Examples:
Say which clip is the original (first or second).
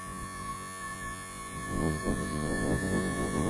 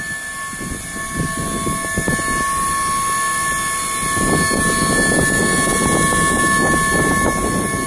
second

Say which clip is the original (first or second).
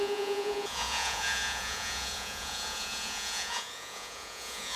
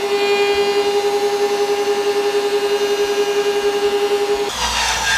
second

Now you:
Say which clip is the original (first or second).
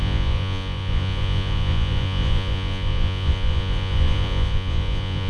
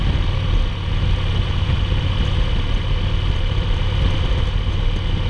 second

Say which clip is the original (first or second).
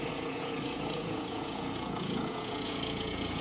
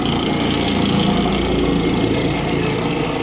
second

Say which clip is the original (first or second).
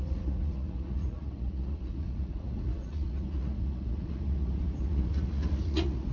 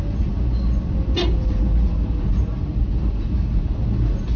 second